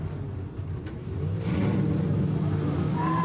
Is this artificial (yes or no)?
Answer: no